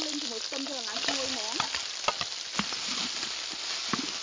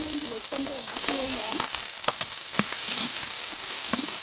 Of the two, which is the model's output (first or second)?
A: second